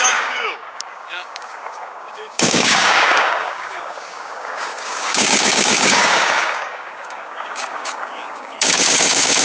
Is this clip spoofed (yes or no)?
yes